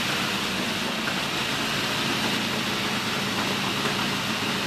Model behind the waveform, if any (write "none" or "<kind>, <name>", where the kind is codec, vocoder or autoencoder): none